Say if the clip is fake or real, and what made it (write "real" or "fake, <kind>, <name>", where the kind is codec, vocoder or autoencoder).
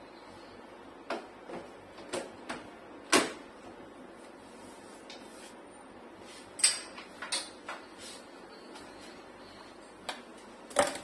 real